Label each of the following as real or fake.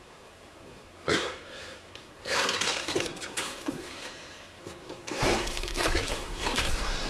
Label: fake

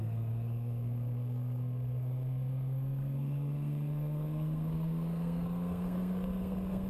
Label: fake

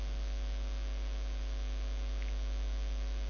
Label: real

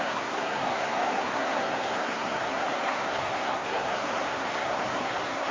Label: fake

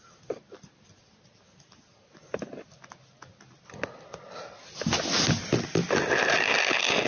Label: real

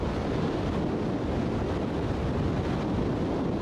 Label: real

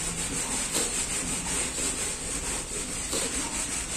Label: real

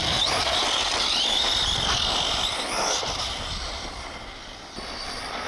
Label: real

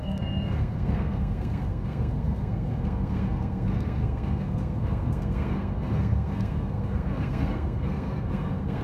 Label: fake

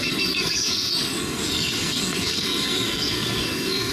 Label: fake